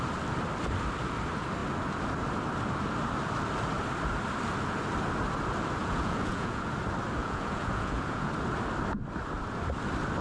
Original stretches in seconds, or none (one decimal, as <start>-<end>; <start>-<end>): 0.0-5.8; 6.7-7.2; 8.3-10.2